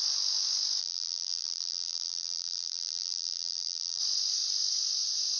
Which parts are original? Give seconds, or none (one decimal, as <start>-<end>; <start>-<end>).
0.0-0.8; 4.0-5.4